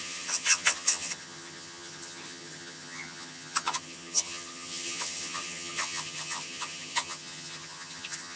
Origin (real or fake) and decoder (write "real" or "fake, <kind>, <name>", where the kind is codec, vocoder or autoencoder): fake, vocoder, HiFi-GAN